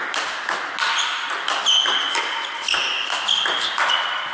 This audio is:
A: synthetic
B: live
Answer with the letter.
B